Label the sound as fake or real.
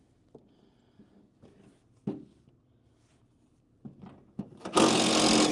real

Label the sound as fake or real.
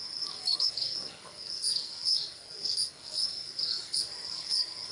fake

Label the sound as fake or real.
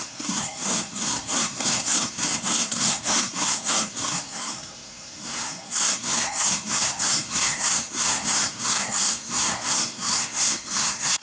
fake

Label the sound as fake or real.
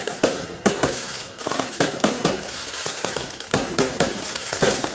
fake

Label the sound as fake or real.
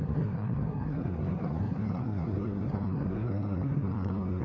fake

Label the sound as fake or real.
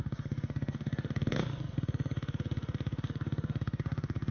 fake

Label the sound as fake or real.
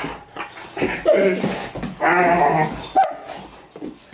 real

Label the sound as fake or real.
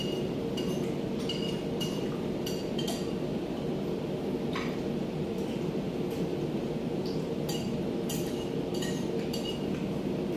real